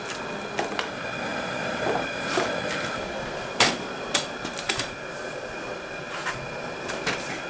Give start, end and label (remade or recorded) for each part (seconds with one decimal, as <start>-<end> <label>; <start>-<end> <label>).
0.0-1.3 recorded; 1.3-3.7 remade; 3.7-7.5 recorded